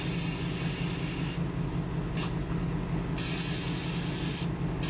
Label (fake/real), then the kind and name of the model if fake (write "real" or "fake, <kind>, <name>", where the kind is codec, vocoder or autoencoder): real